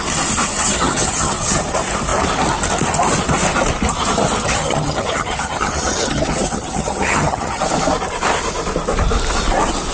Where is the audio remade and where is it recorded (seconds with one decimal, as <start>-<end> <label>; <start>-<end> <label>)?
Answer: 0.0-0.5 recorded; 0.5-1.6 remade; 1.6-4.4 recorded; 4.4-7.6 remade; 7.6-9.9 recorded